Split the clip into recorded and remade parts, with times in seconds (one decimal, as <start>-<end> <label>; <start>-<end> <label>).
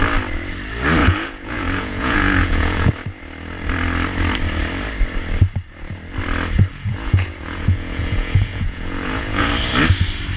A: 0.0-1.0 recorded; 1.0-2.9 remade; 2.9-6.7 recorded; 6.7-9.5 remade; 9.5-10.4 recorded